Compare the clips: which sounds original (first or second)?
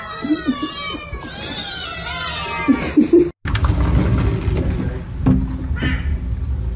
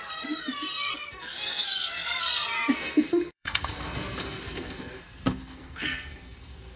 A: first